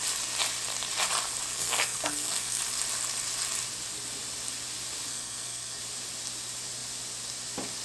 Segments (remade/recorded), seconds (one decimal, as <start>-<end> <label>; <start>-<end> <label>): 0.0-1.5 recorded; 1.5-2.6 remade; 2.6-5.1 recorded; 5.1-5.8 remade; 5.8-7.8 recorded